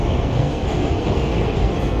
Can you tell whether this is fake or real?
fake